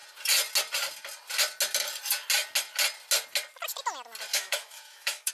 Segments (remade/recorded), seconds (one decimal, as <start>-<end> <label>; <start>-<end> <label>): 0.0-4.3 recorded; 4.3-5.3 remade